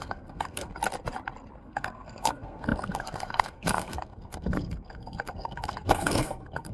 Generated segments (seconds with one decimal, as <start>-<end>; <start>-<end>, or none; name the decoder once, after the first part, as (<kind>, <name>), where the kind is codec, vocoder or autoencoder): 0.0-0.7 (codec, SNAC); 1.6-6.7